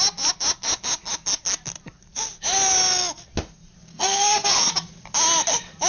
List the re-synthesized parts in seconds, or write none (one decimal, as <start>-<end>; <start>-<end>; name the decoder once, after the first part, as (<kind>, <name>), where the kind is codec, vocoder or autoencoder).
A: 3.9-4.7 (codec, SNAC)